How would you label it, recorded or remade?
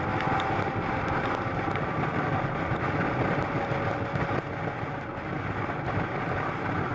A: recorded